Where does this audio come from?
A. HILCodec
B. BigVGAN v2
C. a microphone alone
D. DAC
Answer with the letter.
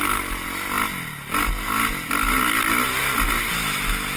C